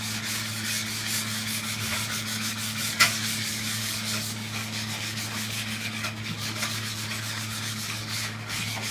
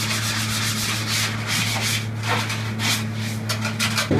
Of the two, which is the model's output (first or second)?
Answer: first